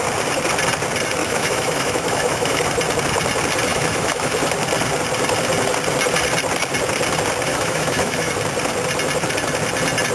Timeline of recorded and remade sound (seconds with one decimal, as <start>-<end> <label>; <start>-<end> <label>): 0.0-1.2 recorded; 1.2-2.6 remade; 2.6-3.7 recorded; 3.7-4.3 remade; 4.3-7.5 recorded; 7.5-8.3 remade; 8.3-10.1 recorded